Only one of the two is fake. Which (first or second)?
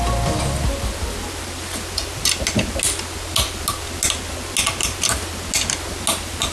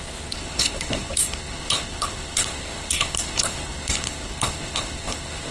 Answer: second